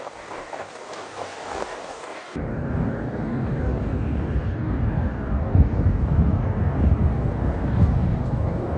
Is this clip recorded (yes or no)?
no